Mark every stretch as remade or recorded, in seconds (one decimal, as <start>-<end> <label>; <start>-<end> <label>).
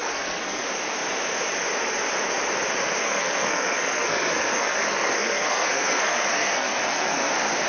0.0-0.6 remade; 0.6-3.0 recorded; 3.0-7.3 remade; 7.3-7.7 recorded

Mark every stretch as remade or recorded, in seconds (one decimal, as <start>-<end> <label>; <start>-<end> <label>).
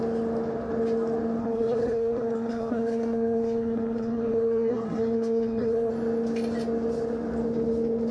0.0-1.4 recorded; 1.4-5.9 remade; 5.9-8.1 recorded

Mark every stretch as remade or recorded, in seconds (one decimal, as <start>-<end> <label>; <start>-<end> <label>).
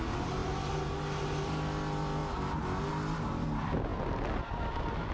0.0-5.1 recorded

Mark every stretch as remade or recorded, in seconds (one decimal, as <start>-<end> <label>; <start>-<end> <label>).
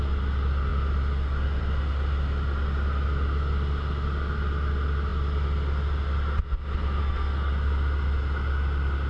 0.0-7.0 recorded; 7.0-7.5 remade; 7.5-9.1 recorded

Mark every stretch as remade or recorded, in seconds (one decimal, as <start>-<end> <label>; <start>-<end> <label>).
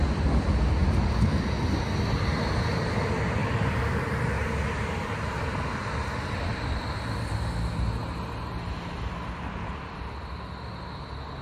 0.0-11.4 recorded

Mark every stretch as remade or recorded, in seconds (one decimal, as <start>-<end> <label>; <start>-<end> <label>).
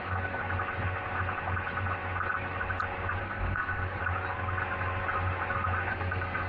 0.0-0.4 remade; 0.4-3.2 recorded; 3.2-4.0 remade; 4.0-5.9 recorded; 5.9-6.5 remade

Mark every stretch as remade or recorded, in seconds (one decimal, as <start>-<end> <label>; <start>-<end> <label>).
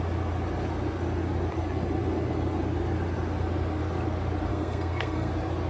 0.0-4.5 recorded; 4.5-5.3 remade; 5.3-5.7 recorded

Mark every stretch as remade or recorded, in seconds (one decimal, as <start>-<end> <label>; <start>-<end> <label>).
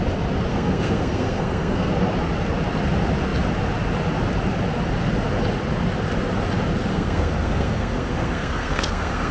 0.0-0.5 recorded; 0.5-1.9 remade; 1.9-6.9 recorded; 6.9-9.3 remade